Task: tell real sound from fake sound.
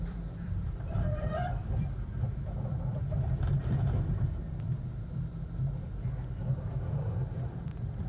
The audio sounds fake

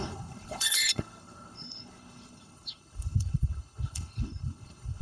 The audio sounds fake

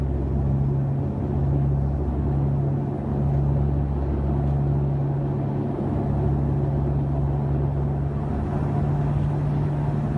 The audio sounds real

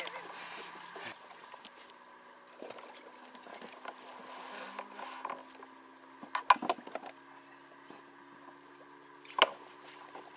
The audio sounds real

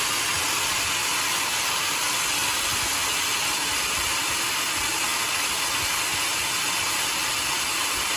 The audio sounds real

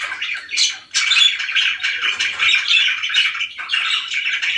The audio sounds fake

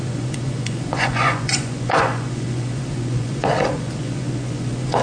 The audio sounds fake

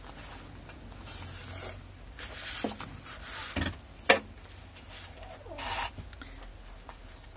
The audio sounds real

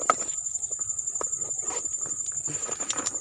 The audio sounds real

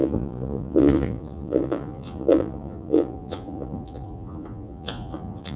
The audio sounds fake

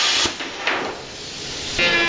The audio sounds real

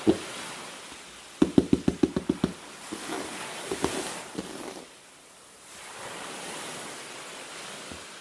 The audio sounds real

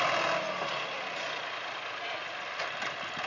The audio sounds real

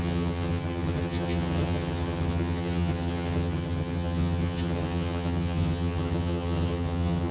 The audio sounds fake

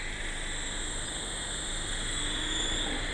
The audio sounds real